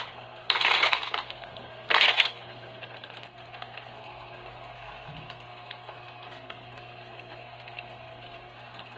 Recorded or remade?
remade